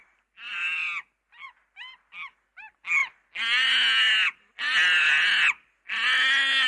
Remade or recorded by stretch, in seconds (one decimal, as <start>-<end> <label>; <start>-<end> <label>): 0.0-6.7 recorded